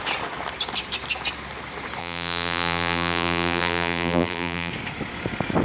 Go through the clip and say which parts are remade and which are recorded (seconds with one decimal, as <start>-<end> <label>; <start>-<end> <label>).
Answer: 0.0-2.0 recorded; 2.0-4.7 remade; 4.7-5.6 recorded